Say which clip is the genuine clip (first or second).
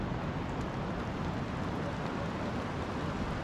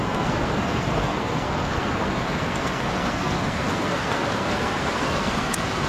first